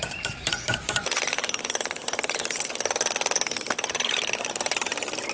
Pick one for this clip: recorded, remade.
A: recorded